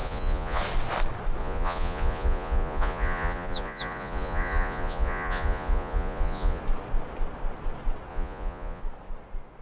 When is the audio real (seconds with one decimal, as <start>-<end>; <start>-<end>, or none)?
0.6-1.4; 6.6-8.1; 8.8-9.6